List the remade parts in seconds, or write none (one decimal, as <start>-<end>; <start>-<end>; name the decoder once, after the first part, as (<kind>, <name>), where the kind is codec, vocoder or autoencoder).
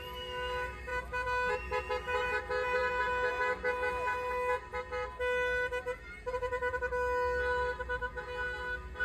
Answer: none